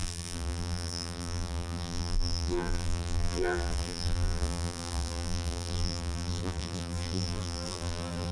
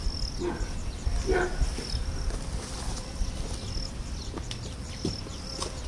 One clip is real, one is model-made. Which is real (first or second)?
second